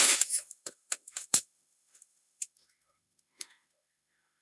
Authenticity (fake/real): fake